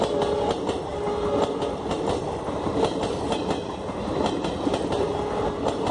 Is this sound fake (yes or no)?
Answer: no